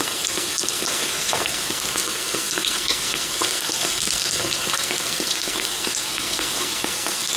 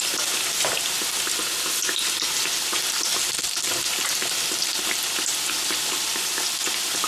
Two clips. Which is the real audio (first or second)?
second